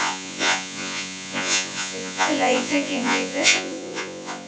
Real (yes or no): no